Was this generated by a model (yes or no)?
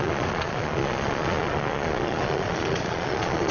yes